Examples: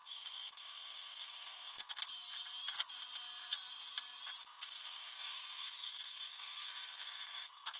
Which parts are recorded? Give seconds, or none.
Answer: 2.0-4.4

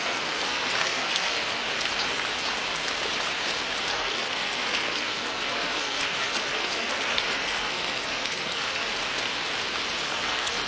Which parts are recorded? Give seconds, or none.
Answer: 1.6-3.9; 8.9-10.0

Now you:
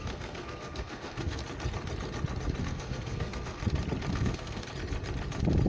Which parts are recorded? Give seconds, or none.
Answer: 1.4-2.6; 3.6-4.1; 4.6-5.7

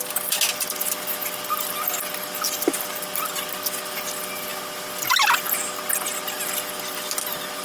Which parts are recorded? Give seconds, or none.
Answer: 0.0-7.6